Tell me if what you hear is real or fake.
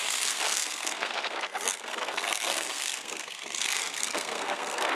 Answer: fake